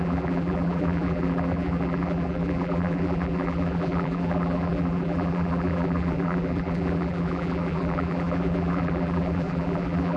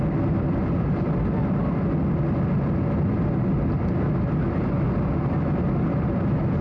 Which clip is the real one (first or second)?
second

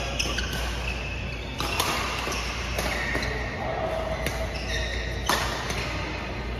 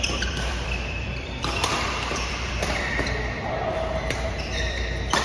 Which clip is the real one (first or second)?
first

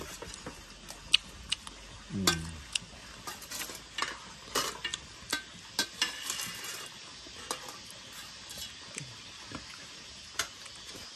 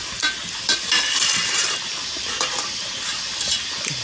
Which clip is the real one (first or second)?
first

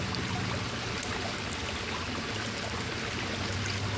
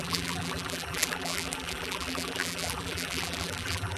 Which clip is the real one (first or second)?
first